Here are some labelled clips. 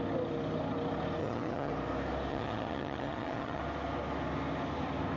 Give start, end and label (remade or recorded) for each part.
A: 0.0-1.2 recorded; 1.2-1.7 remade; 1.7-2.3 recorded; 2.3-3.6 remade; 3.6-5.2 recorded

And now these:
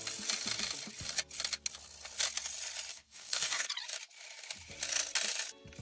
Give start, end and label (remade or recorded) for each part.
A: 0.0-2.9 recorded; 2.9-3.7 remade; 3.7-5.8 recorded

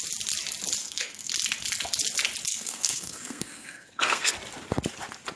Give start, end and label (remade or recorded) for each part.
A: 0.0-0.8 recorded; 0.8-1.3 remade; 1.3-2.5 recorded; 2.5-4.3 remade; 4.3-5.4 recorded

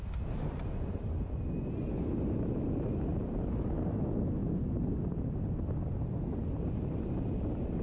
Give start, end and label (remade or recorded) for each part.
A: 0.0-3.1 recorded; 3.1-3.7 remade; 3.7-7.8 recorded